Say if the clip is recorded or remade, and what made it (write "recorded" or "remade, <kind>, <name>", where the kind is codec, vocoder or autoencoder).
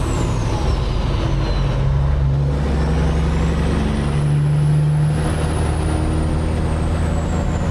recorded